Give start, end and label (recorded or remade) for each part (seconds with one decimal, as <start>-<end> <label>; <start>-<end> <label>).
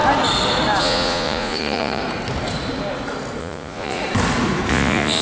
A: 0.0-0.8 recorded; 0.8-2.0 remade; 2.0-3.4 recorded; 3.4-4.0 remade; 4.0-4.7 recorded; 4.7-5.2 remade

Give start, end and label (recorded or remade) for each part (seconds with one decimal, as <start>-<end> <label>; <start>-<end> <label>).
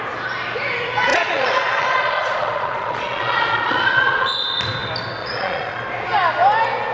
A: 0.0-1.1 recorded; 1.1-4.6 remade; 4.6-5.2 recorded; 5.2-5.8 remade; 5.8-6.9 recorded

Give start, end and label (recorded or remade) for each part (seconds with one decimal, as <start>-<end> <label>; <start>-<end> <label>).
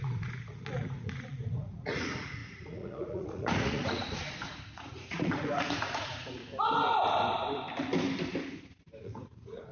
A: 0.0-6.4 remade; 6.4-9.0 recorded; 9.0-9.7 remade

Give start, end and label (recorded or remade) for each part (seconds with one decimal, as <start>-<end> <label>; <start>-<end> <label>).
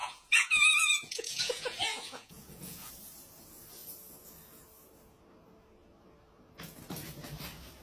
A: 0.0-2.9 remade; 2.9-7.8 recorded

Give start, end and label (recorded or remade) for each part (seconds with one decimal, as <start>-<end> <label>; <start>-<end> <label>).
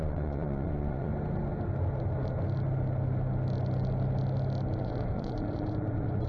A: 0.0-1.1 remade; 1.1-4.8 recorded; 4.8-6.3 remade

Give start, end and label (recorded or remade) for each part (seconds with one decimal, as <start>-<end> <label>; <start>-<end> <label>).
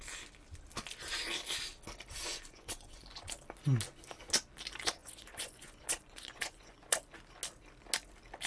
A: 0.0-2.3 recorded; 2.3-3.3 remade; 3.3-5.0 recorded; 5.0-7.0 remade; 7.0-8.5 recorded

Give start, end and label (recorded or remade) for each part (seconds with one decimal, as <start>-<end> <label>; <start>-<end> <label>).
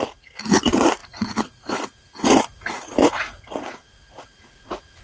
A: 0.0-5.0 remade